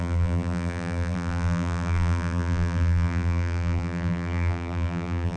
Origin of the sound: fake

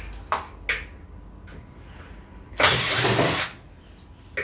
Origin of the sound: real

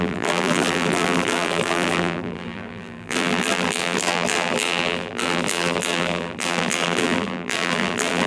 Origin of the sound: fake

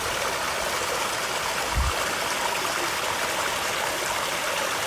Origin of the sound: real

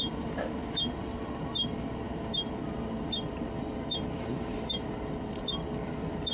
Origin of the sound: fake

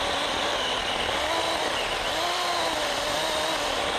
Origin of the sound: real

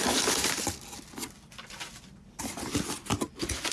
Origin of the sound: real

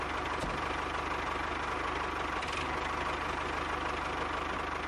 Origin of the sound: real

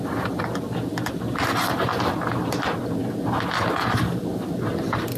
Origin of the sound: real